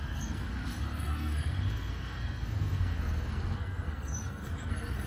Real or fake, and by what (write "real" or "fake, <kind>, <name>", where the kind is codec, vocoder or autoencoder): fake, codec, SNAC